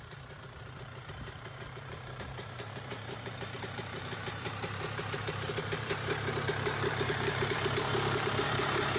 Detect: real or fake fake